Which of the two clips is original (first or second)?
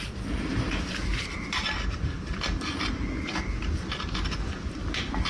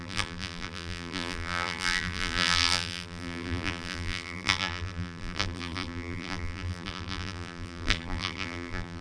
first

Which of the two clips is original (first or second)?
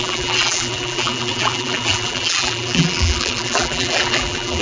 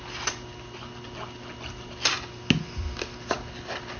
second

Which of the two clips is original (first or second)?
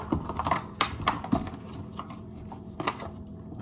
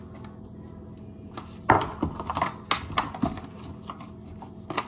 second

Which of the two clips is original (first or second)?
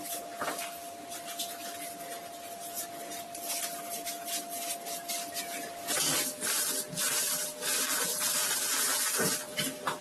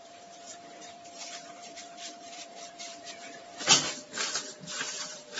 first